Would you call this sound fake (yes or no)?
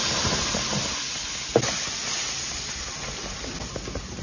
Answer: no